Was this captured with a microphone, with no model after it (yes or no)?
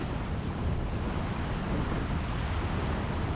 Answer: yes